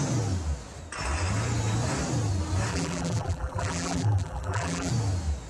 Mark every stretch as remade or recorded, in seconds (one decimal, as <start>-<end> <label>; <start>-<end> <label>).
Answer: 0.0-2.7 recorded; 2.7-4.9 remade; 4.9-5.5 recorded